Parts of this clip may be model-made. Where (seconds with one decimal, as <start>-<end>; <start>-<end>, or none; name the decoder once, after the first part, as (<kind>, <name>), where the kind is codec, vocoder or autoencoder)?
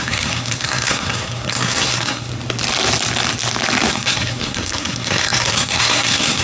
0.0-2.3 (codec, SNAC); 3.9-6.4